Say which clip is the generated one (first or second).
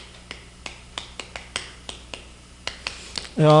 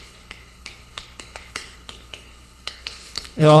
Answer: second